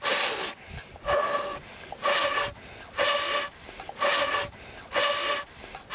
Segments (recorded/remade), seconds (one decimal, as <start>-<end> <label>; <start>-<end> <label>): 0.0-5.9 recorded